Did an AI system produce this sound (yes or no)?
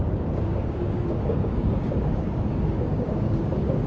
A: yes